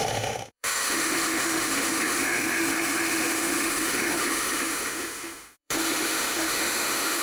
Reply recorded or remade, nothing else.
remade